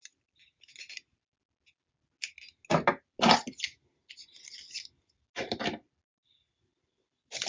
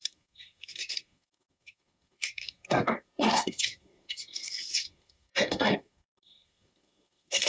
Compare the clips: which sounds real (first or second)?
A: first